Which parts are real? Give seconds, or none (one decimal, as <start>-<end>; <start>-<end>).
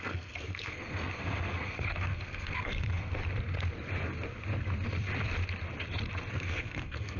3.2-6.3